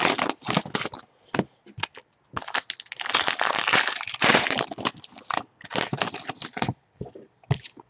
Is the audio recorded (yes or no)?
yes